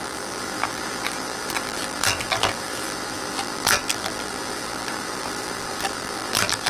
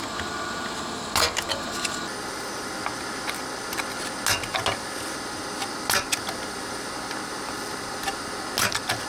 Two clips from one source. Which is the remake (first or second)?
first